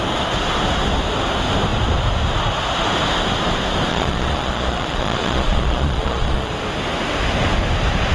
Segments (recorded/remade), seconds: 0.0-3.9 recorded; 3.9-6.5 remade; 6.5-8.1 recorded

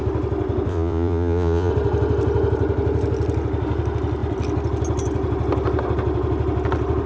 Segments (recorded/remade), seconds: 0.0-0.7 recorded; 0.7-1.7 remade; 1.7-7.1 recorded

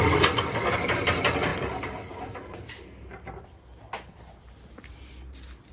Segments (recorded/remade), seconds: 0.0-5.7 recorded

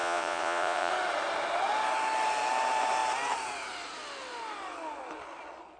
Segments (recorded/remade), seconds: 0.0-0.9 remade; 0.9-5.8 recorded

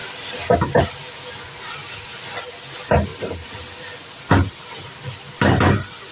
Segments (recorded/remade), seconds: 0.0-6.1 recorded

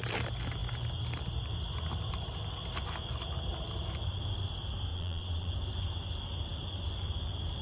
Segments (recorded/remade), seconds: 0.0-4.9 recorded; 4.9-5.5 remade; 5.5-7.6 recorded

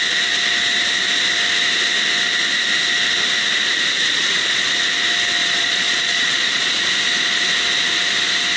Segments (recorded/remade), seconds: 0.0-4.0 recorded; 4.0-4.7 remade; 4.7-5.4 recorded; 5.4-6.9 remade; 6.9-8.6 recorded